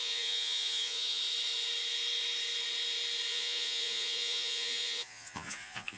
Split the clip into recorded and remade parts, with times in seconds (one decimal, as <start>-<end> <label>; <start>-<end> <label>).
0.0-1.2 remade; 1.2-3.3 recorded; 3.3-6.0 remade